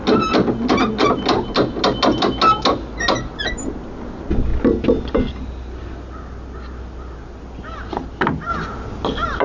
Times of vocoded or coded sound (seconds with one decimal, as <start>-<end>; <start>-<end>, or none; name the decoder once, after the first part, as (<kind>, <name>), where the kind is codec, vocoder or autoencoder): none